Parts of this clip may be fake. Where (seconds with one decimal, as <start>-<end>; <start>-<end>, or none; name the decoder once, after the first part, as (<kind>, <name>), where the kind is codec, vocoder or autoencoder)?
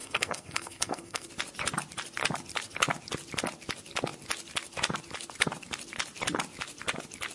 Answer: 0.0-1.3 (codec, SNAC)